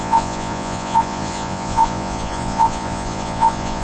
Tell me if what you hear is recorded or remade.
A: remade